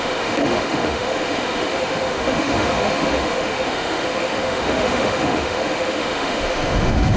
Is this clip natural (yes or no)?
no